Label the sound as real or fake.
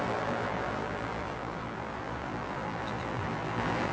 fake